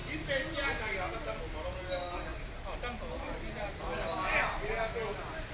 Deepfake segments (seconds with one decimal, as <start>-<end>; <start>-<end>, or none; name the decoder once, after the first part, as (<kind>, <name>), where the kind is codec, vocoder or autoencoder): none